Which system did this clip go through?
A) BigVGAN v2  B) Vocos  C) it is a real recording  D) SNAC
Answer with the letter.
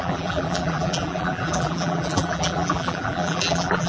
A